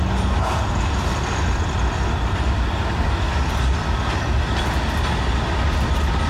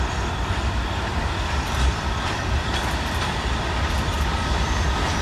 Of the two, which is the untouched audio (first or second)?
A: first